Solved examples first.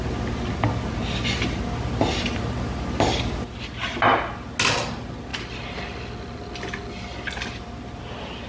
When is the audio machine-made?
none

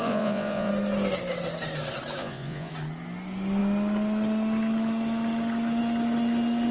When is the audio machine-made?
0.0-0.7 (vocoder, Vocos); 2.2-2.7

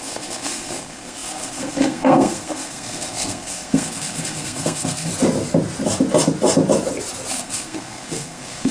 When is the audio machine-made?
0.0-5.1 (codec, SNAC); 7.3-8.7

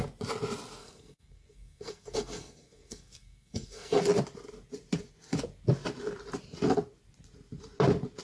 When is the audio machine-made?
0.8-4.0 (codec, SNAC)

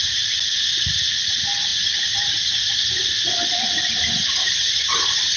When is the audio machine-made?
none

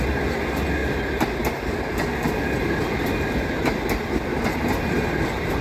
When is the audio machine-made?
none

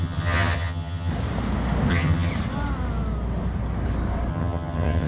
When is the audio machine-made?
0.0-1.1 (vocoder, HiFi-GAN); 1.9-2.3; 4.3-5.1